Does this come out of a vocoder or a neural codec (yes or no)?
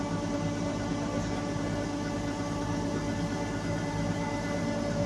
no